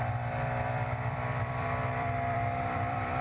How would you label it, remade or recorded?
remade